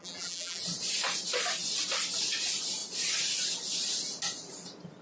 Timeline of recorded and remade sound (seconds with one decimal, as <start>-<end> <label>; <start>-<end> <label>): 0.0-0.6 remade; 0.6-5.0 recorded

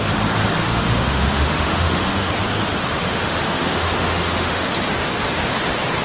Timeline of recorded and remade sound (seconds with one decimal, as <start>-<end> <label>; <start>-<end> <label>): 0.0-0.6 recorded; 0.6-2.3 remade; 2.3-2.8 recorded; 2.8-4.7 remade; 4.7-6.0 recorded

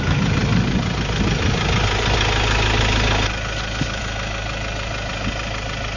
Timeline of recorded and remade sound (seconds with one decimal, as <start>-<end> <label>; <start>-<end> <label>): 0.0-6.0 recorded